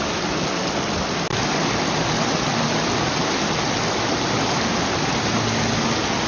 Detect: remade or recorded recorded